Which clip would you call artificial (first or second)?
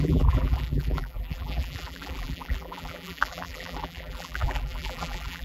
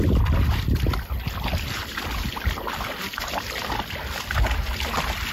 first